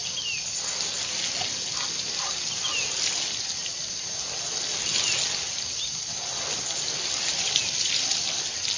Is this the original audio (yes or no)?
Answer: yes